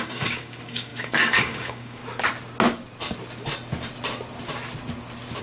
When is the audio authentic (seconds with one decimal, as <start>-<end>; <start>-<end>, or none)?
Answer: 2.0-5.4